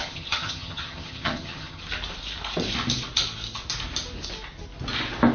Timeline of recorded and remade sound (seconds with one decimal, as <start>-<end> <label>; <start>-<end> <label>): 0.0-1.8 remade; 1.8-5.3 recorded